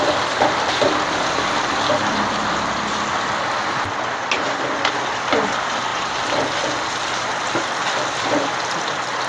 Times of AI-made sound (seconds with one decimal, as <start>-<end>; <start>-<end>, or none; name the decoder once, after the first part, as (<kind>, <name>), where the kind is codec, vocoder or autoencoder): none